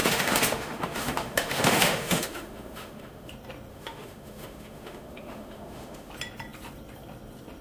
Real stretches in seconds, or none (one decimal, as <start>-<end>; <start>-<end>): 3.3-3.7; 6.1-7.6